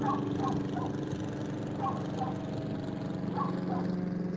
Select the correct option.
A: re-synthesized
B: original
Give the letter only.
B